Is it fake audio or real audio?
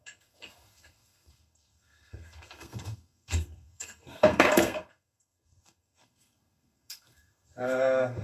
fake